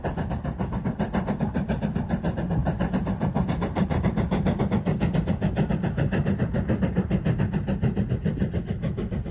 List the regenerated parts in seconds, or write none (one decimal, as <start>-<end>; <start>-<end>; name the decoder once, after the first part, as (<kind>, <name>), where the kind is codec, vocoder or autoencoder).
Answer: 2.6-4.6 (vocoder, BigVGAN v2)